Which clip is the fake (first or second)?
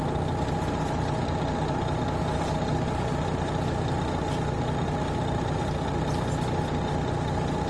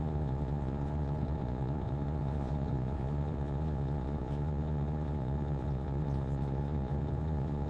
second